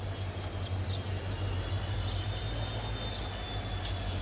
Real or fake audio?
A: real